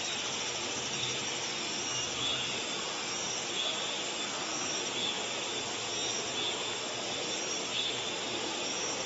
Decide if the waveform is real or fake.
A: real